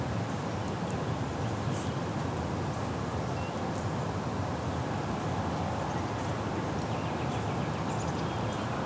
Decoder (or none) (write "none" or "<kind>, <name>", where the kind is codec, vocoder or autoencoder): none